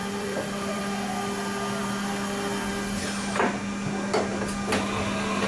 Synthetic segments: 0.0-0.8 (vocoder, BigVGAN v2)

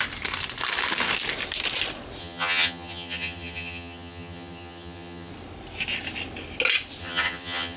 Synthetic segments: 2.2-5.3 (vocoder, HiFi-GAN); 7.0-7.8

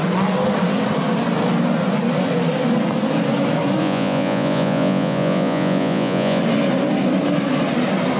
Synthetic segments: 3.8-6.4 (vocoder, Vocos)

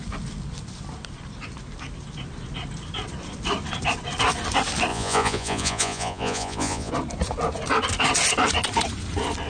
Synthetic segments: 4.9-6.9 (vocoder, Vocos)

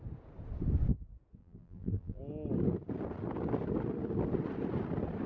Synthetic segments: 1.4-2.2 (vocoder, BigVGAN v2)

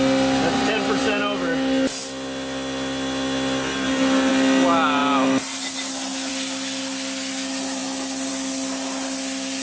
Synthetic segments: none

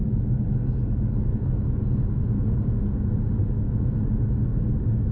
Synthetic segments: 1.3-4.0 (vocoder, Vocos)